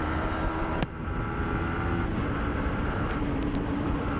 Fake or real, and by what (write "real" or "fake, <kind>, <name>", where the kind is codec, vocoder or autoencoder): fake, vocoder, BigVGAN v2